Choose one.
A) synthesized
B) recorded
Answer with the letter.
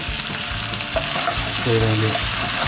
B